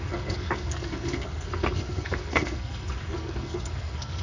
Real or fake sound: fake